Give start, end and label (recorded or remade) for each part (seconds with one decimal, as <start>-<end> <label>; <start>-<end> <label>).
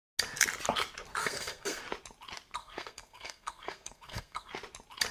0.0-1.2 recorded; 1.2-1.8 remade; 1.8-2.6 recorded; 2.6-4.5 remade; 4.5-5.1 recorded